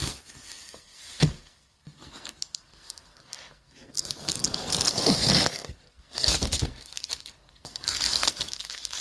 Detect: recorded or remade remade